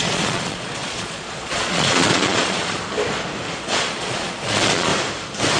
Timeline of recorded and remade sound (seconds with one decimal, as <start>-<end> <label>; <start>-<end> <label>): 0.0-2.8 remade; 2.8-3.6 recorded; 3.6-4.9 remade; 4.9-5.6 recorded